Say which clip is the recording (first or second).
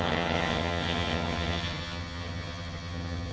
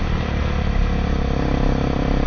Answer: second